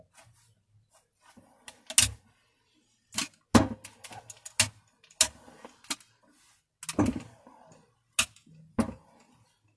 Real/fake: real